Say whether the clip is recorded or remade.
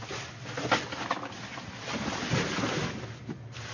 recorded